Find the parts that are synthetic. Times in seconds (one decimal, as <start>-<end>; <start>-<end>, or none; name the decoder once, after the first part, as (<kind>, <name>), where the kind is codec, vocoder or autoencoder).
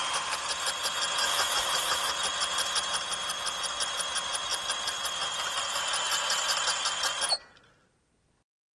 1.2-2.1 (autoencoder, DAC-VAE)